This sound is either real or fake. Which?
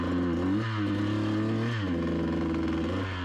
real